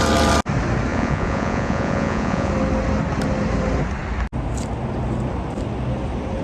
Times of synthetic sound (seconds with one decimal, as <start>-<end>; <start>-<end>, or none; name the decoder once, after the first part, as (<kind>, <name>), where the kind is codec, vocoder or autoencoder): 0.9-2.5 (vocoder, Vocos)